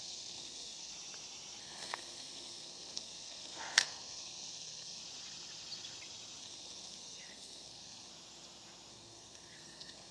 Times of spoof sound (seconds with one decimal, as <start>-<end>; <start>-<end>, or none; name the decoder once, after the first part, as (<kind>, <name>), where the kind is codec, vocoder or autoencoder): 0.0-0.9 (codec, SNAC); 1.6-5.0; 6.4-8.1; 8.9-10.1